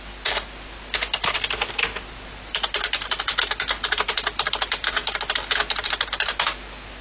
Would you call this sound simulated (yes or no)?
no